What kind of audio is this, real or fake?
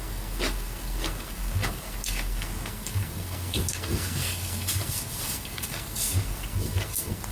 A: fake